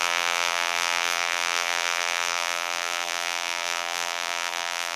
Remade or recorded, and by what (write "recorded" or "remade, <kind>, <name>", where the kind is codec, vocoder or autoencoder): remade, vocoder, BigVGAN v2